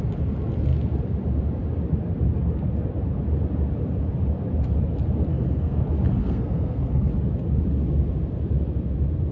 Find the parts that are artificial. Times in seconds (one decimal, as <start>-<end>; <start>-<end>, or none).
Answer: 5.3-5.8; 6.2-7.1